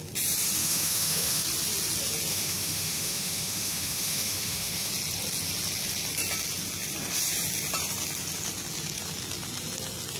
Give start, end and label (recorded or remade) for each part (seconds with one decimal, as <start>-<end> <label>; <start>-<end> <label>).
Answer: 0.0-0.6 recorded; 0.6-1.4 remade; 1.4-2.3 recorded; 2.3-4.9 remade; 4.9-10.2 recorded